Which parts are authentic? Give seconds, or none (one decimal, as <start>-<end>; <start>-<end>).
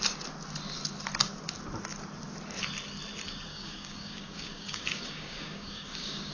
0.0-3.5